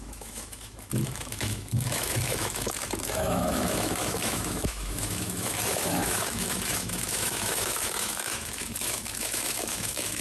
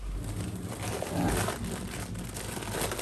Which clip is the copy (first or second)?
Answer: first